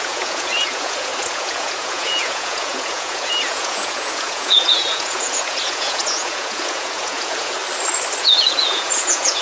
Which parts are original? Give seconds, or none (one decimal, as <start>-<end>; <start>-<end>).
7.6-8.2